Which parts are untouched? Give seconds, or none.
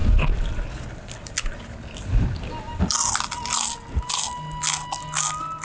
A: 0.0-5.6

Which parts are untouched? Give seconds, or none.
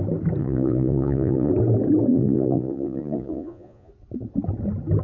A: 0.0-0.4; 1.5-2.1; 3.9-5.0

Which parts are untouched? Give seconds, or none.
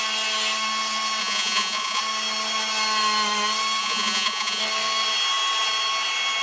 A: 0.0-1.2; 2.0-3.8; 4.6-6.4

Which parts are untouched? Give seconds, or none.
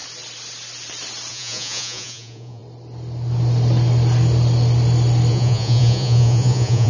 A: 0.0-1.3; 2.6-5.3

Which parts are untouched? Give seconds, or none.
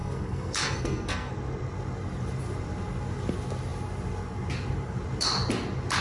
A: 1.3-6.0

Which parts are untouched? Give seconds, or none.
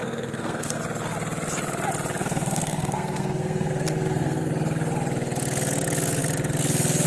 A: 0.8-2.2; 4.5-7.1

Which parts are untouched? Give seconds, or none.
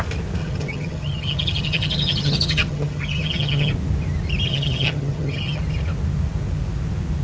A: 0.0-0.4; 3.7-4.5; 5.6-7.2